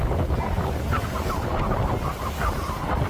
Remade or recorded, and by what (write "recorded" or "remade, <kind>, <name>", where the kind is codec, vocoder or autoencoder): recorded